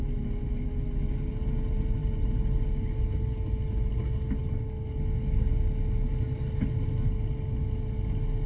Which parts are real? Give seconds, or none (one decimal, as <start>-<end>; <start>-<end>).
0.0-8.5

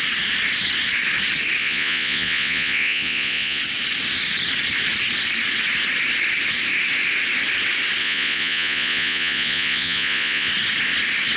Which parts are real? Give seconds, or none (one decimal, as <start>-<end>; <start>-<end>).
0.0-1.6; 3.6-8.0; 10.5-11.4